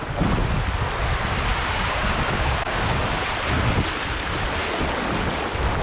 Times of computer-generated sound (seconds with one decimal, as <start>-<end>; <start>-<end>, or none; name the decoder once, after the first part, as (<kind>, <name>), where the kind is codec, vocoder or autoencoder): 1.5-3.2 (codec, DAC)